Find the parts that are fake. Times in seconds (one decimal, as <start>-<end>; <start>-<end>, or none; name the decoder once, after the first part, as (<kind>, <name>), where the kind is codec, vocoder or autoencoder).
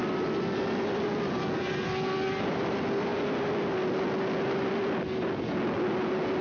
none